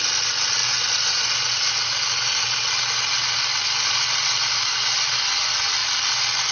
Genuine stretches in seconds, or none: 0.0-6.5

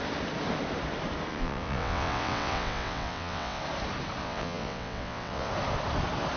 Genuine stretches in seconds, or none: 0.0-1.3; 3.6-4.2; 5.5-6.4

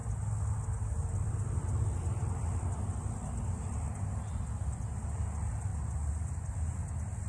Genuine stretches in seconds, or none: 0.0-7.3

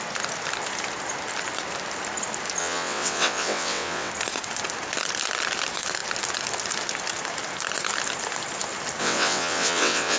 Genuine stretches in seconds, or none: 0.0-2.6; 4.1-9.0

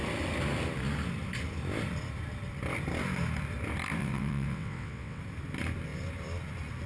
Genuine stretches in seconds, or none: 0.0-4.0; 5.2-6.9

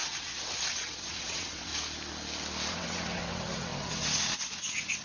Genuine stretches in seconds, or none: 1.7-2.7